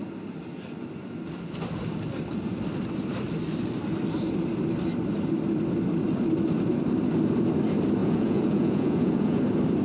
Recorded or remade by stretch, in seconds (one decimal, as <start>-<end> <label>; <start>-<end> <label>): 0.0-8.0 recorded; 8.0-9.4 remade; 9.4-9.8 recorded